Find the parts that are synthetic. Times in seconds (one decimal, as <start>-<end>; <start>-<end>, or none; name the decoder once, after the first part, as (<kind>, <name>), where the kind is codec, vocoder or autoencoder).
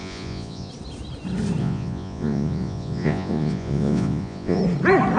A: 0.0-0.7 (vocoder, Vocos); 1.6-4.6